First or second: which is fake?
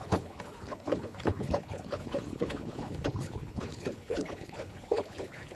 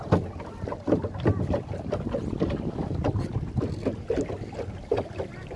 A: first